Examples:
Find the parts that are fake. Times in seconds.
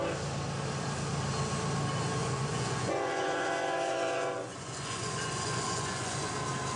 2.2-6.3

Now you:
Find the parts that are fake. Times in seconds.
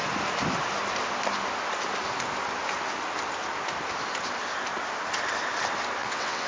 6.0-6.5